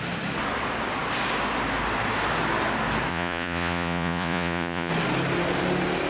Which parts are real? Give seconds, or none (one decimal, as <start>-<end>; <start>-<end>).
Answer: 0.0-3.1; 4.9-6.1